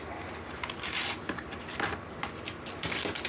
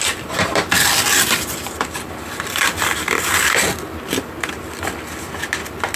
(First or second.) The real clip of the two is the first